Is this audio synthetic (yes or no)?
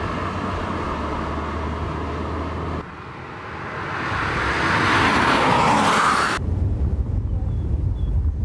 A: no